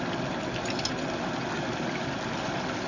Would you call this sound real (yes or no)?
yes